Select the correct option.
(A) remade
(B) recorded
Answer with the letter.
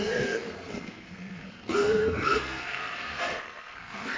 A